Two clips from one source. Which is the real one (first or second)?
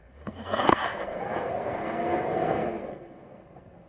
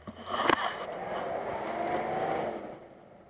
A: second